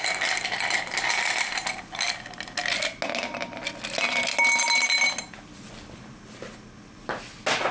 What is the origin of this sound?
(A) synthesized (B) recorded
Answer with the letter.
B